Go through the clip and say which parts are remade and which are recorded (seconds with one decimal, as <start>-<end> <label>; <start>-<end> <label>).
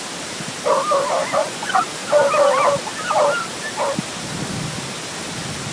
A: 0.0-1.2 recorded; 1.2-1.8 remade; 1.8-5.7 recorded